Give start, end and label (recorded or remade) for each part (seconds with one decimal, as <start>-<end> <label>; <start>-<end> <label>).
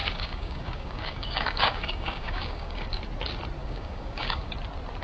0.0-3.0 remade; 3.0-3.6 recorded; 3.6-4.5 remade; 4.5-5.0 recorded